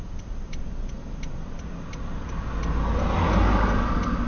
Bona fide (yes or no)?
yes